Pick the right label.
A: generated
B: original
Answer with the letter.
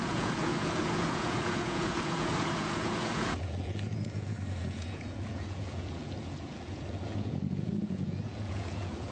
A